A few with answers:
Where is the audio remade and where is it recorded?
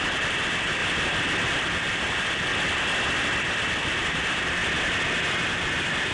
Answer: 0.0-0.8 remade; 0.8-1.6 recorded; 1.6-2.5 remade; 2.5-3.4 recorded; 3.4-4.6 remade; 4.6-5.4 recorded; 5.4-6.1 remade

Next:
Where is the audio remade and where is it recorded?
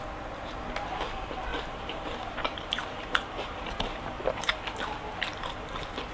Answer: 0.0-1.5 recorded; 1.5-4.5 remade; 4.5-6.1 recorded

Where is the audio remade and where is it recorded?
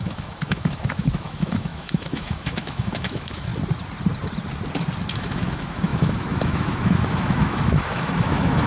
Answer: 0.0-3.5 remade; 3.5-5.1 recorded; 5.1-8.7 remade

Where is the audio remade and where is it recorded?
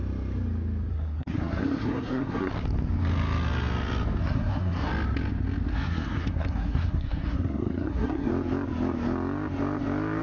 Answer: 0.0-0.9 recorded; 0.9-2.5 remade; 2.5-4.2 recorded; 4.2-4.9 remade; 4.9-5.7 recorded; 5.7-8.3 remade; 8.3-10.2 recorded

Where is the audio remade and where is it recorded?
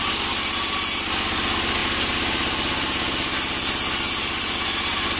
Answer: 0.0-5.2 recorded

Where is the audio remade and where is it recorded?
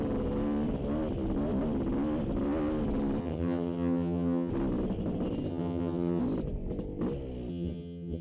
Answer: 0.0-3.2 recorded; 3.2-4.5 remade; 4.5-5.5 recorded; 5.5-6.2 remade; 6.2-7.5 recorded; 7.5-8.2 remade